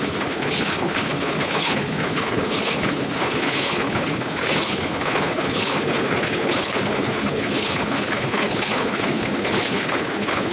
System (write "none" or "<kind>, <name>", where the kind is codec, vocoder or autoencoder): codec, HILCodec